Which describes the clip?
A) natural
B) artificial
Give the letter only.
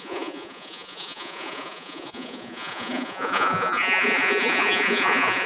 B